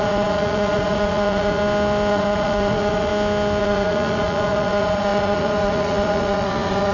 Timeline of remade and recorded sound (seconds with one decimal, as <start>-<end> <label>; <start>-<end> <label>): 0.0-1.6 remade; 1.6-2.1 recorded; 2.1-3.1 remade; 3.1-3.6 recorded; 3.6-6.9 remade

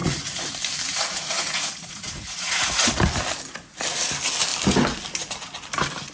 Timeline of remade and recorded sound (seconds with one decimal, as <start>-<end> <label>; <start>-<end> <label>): 0.0-0.5 remade; 0.5-0.9 recorded; 0.9-2.8 remade; 2.8-6.1 recorded

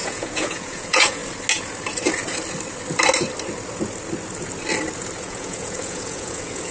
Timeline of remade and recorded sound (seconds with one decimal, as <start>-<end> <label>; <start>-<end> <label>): 0.0-1.2 remade; 1.2-5.2 recorded; 5.2-6.7 remade

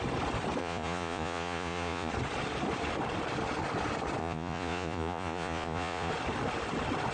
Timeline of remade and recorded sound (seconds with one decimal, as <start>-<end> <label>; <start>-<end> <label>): 0.0-0.6 recorded; 0.6-2.1 remade; 2.1-4.2 recorded; 4.2-6.1 remade; 6.1-7.1 recorded

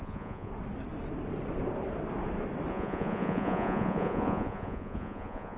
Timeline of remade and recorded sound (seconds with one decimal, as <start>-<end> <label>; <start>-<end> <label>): 0.0-0.5 remade; 0.5-2.7 recorded; 2.7-5.6 remade

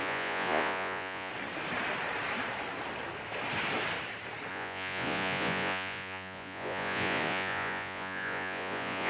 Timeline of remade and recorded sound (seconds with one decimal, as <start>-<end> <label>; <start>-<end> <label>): 0.0-1.3 remade; 1.3-4.5 recorded; 4.5-9.1 remade

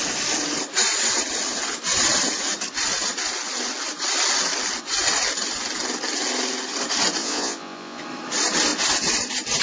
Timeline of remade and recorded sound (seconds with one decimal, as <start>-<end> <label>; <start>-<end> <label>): 0.0-7.2 recorded; 7.2-8.0 remade; 8.0-9.6 recorded